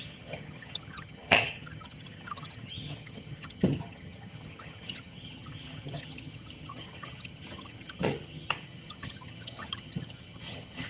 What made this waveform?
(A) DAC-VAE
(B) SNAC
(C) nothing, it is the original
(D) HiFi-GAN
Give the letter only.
D